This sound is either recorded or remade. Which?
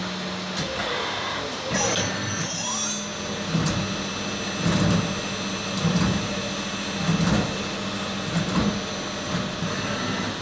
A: recorded